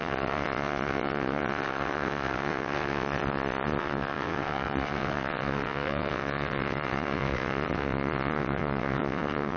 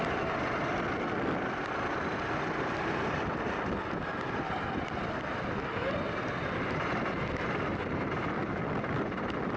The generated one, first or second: first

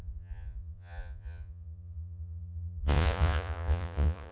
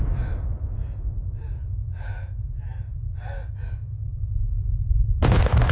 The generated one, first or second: first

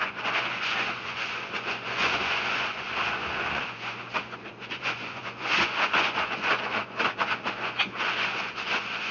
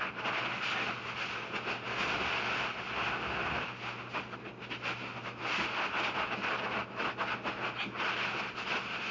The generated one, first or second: first